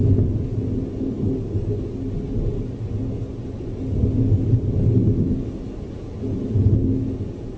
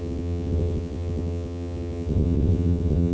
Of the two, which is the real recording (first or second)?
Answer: first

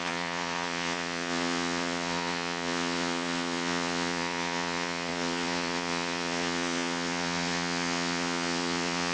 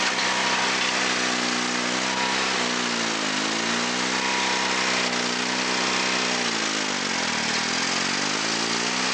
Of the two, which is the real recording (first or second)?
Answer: second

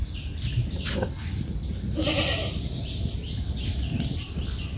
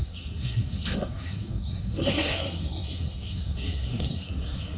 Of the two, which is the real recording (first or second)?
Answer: first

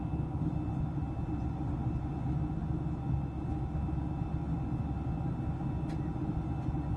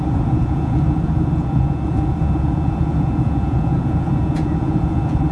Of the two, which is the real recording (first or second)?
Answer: first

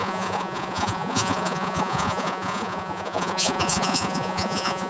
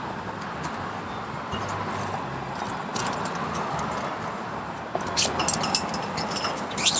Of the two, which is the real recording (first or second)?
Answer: second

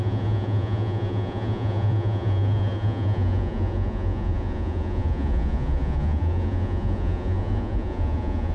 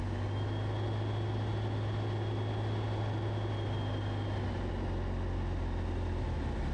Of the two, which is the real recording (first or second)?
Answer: second